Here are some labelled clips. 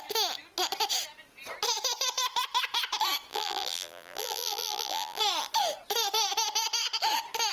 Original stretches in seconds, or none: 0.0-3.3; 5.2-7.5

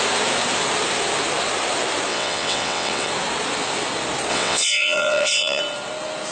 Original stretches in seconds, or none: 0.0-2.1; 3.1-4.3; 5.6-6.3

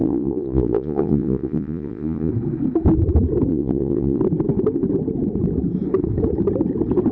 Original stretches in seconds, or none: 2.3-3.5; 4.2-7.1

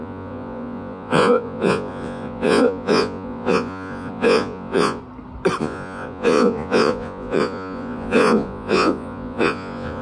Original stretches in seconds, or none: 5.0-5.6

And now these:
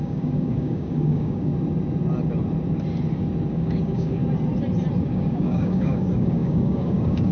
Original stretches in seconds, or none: 1.5-3.5; 4.2-5.0

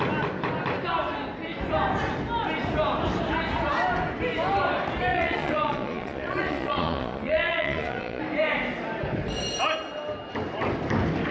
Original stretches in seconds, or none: 0.0-5.1; 8.2-11.3